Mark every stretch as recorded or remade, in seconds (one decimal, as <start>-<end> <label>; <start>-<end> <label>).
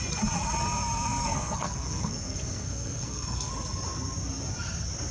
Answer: 0.0-1.2 recorded; 1.2-3.5 remade; 3.5-5.1 recorded